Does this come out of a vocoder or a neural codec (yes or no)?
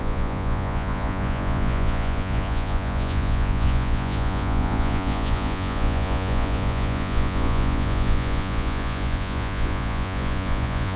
yes